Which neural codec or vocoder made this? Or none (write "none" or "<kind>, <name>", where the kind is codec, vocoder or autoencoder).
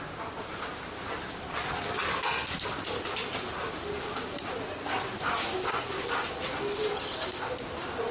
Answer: none